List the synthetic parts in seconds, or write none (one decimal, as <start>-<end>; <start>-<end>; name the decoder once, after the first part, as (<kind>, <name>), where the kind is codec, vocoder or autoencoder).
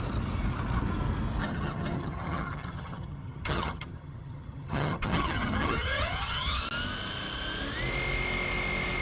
1.4-6.6 (vocoder, HiFi-GAN)